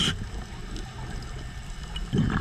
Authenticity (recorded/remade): recorded